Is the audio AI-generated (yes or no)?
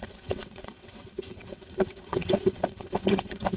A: yes